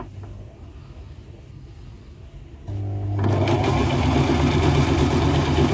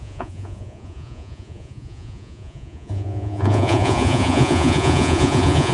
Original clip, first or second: first